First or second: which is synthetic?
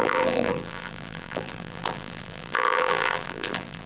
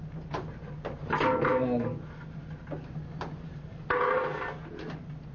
first